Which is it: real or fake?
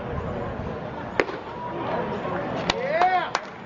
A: real